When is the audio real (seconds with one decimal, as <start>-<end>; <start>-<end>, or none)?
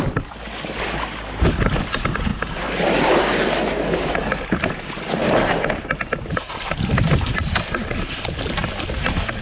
0.0-9.4